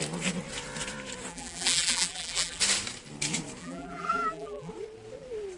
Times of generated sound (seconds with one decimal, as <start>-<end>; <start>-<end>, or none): 1.3-2.6; 3.6-4.7